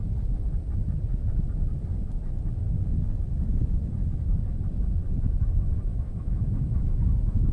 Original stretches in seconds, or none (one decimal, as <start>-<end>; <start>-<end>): 0.0-5.9; 6.8-7.5